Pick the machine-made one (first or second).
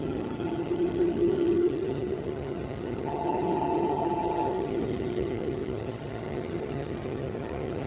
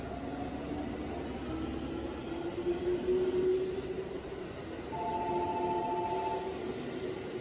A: first